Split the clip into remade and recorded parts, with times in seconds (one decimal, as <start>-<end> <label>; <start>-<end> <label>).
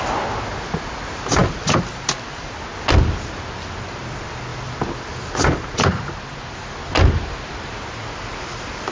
0.0-8.9 recorded